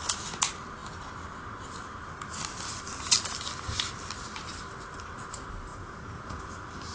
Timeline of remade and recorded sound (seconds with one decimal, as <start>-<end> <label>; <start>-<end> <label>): 0.0-5.7 recorded; 5.7-6.5 remade; 6.5-6.9 recorded